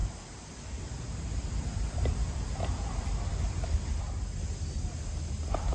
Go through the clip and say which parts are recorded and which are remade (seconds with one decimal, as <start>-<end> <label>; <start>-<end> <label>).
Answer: 0.0-1.3 remade; 1.3-5.7 recorded